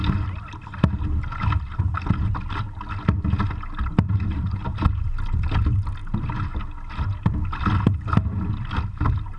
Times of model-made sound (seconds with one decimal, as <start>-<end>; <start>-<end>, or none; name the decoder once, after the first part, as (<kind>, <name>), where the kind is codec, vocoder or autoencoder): none